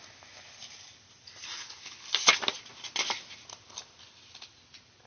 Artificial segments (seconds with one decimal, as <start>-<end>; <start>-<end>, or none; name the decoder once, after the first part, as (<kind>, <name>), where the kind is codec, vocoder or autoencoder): none